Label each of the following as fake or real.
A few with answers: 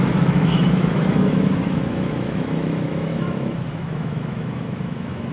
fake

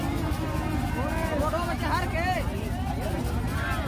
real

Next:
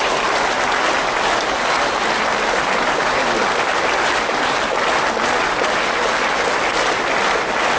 real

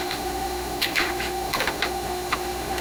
fake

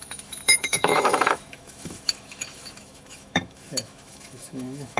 fake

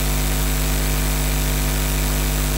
real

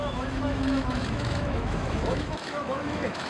fake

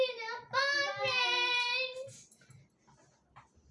real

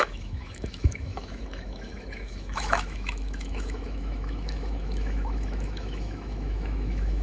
fake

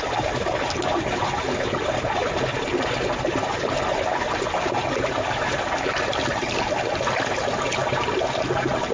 real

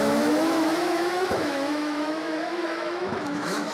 fake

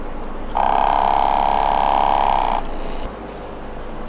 real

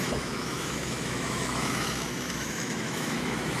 fake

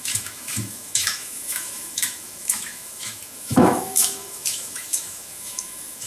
fake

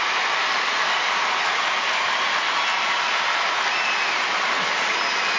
real